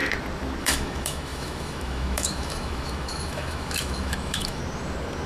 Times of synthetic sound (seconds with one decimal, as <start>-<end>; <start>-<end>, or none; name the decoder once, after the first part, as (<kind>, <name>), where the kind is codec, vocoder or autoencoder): 0.6-4.6 (autoencoder, DAC-VAE)